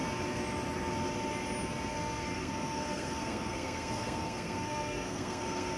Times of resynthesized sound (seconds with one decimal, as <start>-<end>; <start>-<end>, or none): 1.9-5.8